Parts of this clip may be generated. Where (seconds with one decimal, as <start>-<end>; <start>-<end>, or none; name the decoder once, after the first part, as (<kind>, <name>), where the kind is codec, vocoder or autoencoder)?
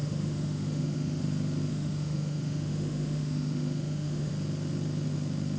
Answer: 0.0-1.2 (autoencoder, DAC-VAE); 1.7-4.3